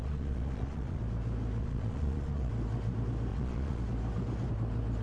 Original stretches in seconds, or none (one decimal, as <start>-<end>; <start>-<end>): 1.0-1.6; 2.5-3.3; 3.8-5.0